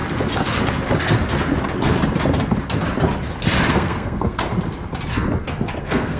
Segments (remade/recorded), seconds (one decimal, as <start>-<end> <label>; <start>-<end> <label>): 0.0-3.7 recorded; 3.7-4.4 remade; 4.4-5.8 recorded; 5.8-6.2 remade